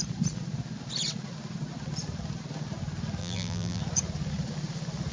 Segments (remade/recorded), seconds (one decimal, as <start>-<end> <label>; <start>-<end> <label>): 0.0-3.2 recorded; 3.2-3.8 remade; 3.8-5.1 recorded

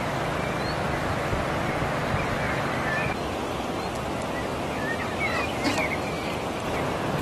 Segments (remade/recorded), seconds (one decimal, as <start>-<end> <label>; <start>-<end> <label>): 0.0-7.2 recorded